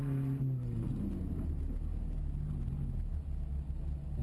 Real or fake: real